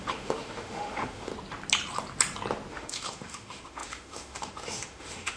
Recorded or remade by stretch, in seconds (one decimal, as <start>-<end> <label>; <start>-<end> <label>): 0.0-1.3 remade; 1.3-2.7 recorded; 2.7-5.4 remade